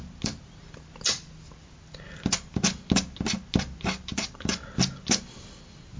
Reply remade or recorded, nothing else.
recorded